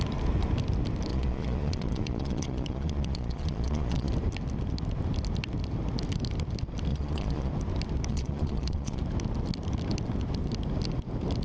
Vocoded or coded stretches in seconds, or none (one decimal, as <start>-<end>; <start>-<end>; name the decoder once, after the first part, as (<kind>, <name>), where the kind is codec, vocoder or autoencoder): 1.1-4.1 (vocoder, Vocos); 6.9-7.5; 8.1-9.0